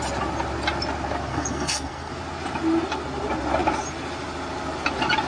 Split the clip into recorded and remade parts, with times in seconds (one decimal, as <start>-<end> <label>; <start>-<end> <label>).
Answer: 0.0-1.3 recorded; 1.3-2.1 remade; 2.1-5.3 recorded